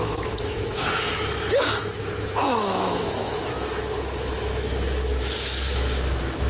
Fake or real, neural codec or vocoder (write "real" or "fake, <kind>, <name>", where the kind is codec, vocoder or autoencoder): fake, autoencoder, DAC-VAE